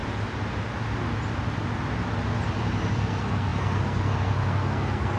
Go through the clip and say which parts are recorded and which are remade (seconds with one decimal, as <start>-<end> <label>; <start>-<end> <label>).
0.0-2.9 recorded; 2.9-5.2 remade